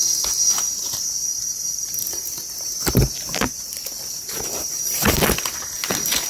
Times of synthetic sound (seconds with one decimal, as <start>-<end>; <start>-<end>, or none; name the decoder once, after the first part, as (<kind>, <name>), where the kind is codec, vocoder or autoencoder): 1.2-5.0 (vocoder, BigVGAN v2)